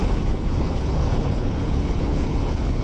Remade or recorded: remade